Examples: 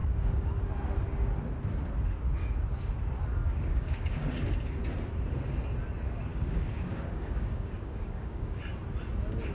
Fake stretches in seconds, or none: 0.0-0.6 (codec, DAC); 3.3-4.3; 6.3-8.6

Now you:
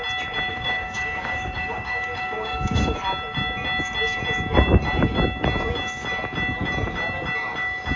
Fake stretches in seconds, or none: 0.5-3.0 (codec, DAC)

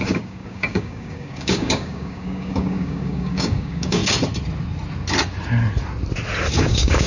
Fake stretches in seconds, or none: 0.0-4.0 (codec, DAC); 6.6-7.1

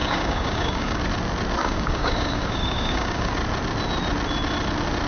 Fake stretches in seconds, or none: 0.0-1.0 (codec, DAC); 1.6-3.3

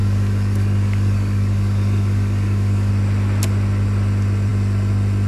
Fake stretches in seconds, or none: 0.0-2.9 (codec, DAC)